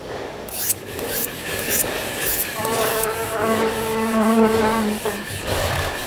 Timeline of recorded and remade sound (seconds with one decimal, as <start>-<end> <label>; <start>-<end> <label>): 0.0-6.1 remade

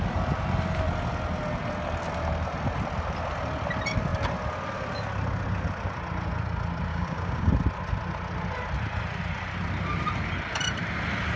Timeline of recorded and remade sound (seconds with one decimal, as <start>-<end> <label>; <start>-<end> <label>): 0.0-6.9 recorded; 6.9-7.5 remade; 7.5-11.4 recorded

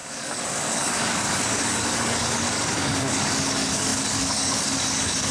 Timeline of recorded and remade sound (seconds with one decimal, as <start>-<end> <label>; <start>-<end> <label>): 0.0-5.3 remade

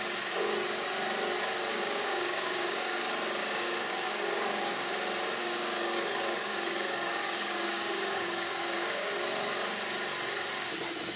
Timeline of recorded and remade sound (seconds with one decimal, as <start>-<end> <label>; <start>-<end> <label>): 0.0-1.7 recorded; 1.7-3.0 remade; 3.0-3.4 recorded; 3.4-4.9 remade; 4.9-5.4 recorded; 5.4-9.2 remade; 9.2-11.2 recorded

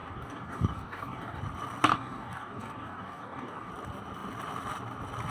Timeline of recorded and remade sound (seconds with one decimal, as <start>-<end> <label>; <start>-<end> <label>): 0.0-1.4 remade; 1.4-1.9 recorded; 1.9-3.7 remade; 3.7-5.3 recorded

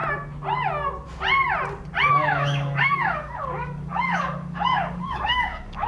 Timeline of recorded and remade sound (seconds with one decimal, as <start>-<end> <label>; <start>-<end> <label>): 0.0-2.1 recorded; 2.1-5.9 remade

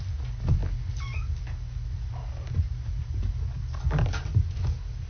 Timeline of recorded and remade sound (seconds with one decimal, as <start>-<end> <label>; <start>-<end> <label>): 0.0-5.1 recorded

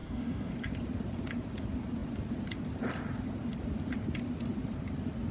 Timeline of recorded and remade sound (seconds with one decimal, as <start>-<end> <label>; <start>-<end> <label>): 0.0-0.5 remade; 0.5-5.3 recorded